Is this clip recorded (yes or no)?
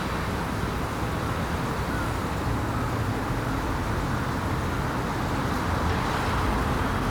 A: yes